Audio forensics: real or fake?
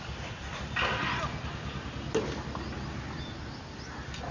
real